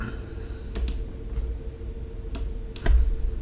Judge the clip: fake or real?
real